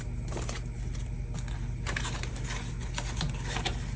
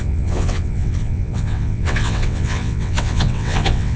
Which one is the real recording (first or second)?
first